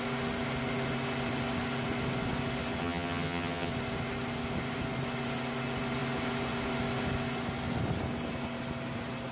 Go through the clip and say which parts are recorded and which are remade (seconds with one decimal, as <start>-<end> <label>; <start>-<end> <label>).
0.0-2.8 recorded; 2.8-3.7 remade; 3.7-9.3 recorded